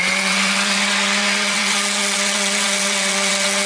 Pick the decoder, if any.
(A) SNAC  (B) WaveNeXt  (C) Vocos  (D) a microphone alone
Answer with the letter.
B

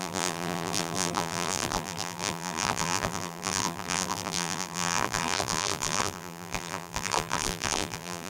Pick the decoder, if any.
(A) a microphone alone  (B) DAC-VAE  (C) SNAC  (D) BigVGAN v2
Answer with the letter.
D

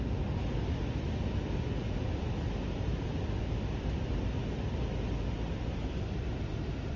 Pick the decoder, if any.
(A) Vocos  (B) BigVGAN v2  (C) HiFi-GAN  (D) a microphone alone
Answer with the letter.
D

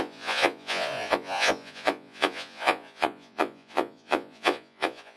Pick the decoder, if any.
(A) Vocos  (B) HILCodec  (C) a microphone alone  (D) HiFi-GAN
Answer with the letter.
A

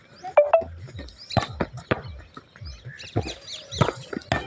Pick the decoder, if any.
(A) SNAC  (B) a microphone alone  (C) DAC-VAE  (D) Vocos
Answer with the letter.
B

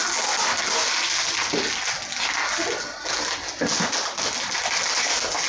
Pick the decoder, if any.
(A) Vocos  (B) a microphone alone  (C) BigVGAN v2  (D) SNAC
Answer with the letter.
B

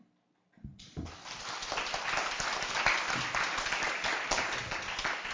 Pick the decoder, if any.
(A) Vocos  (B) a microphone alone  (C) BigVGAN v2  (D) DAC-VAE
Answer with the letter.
B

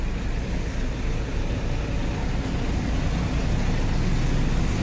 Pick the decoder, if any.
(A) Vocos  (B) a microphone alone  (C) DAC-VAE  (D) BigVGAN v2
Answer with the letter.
B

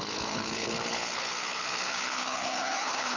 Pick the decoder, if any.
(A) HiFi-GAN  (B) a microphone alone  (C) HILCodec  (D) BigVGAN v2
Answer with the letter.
C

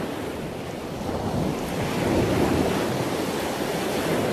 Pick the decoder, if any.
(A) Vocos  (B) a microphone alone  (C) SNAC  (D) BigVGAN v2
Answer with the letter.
B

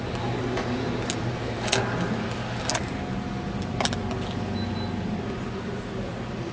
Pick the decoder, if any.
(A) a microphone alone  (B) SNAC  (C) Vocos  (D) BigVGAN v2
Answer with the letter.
A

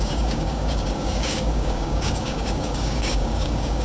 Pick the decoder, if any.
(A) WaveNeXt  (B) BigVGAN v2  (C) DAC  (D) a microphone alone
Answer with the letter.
C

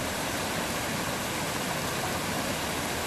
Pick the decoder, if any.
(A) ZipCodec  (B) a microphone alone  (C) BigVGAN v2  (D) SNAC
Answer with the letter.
B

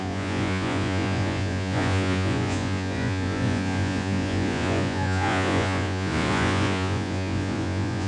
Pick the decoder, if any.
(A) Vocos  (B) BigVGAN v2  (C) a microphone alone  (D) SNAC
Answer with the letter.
A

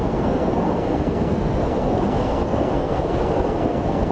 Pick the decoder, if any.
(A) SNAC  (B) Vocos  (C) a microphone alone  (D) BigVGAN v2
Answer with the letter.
A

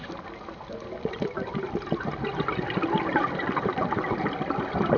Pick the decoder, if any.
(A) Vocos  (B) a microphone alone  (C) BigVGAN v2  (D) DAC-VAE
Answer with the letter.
B